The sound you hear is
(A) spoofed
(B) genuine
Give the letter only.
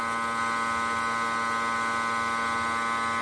B